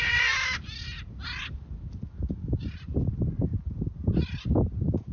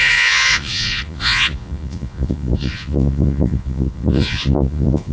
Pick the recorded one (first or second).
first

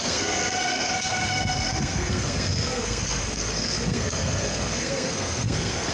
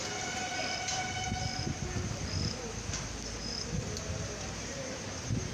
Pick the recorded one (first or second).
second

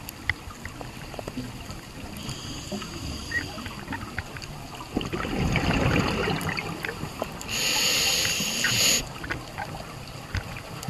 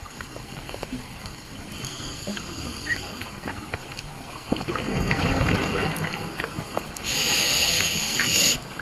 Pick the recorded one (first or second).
first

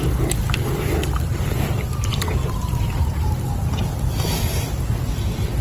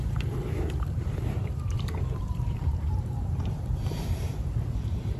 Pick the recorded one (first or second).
first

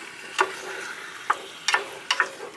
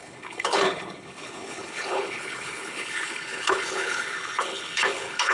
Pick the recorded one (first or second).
first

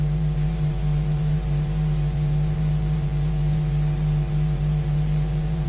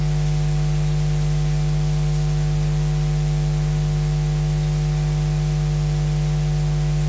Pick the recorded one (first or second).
second